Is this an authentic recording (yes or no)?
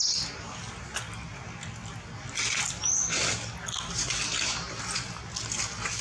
yes